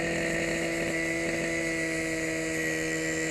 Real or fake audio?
real